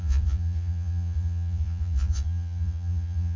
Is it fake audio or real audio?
fake